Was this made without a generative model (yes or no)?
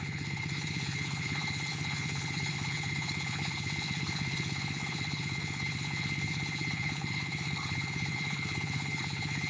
no